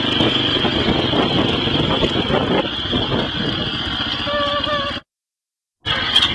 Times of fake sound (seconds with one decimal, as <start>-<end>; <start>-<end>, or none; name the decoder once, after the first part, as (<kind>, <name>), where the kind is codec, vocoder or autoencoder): none